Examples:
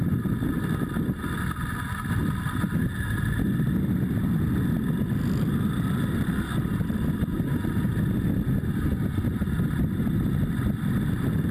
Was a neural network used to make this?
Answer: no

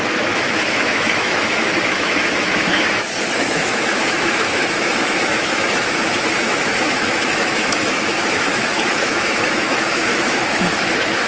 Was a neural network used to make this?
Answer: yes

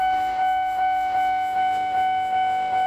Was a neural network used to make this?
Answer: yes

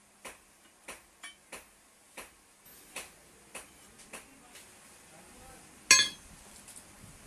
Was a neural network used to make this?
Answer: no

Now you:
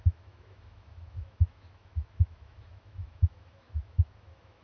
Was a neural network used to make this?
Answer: yes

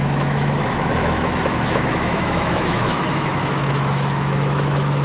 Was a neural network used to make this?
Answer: yes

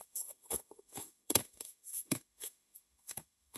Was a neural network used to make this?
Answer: yes